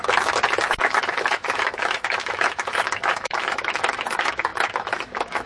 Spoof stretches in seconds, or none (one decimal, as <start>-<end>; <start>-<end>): 0.7-5.5